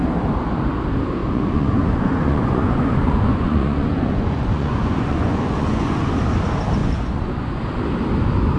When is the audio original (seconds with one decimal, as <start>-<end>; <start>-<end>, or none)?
0.0-1.2; 6.0-6.8; 7.6-8.6